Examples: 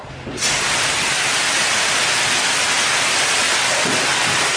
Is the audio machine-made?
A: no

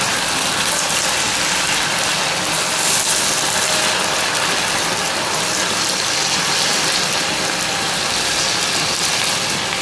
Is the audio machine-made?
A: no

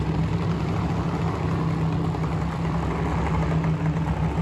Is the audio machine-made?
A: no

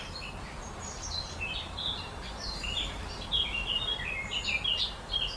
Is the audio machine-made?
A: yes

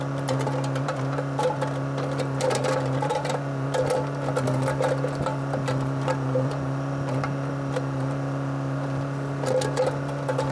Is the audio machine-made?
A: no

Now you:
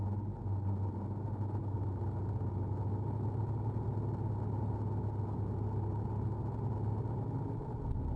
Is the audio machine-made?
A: no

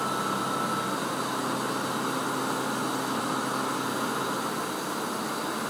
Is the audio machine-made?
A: no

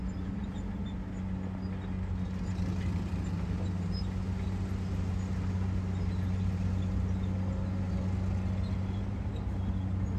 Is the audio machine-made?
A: no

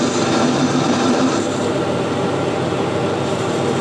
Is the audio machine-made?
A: yes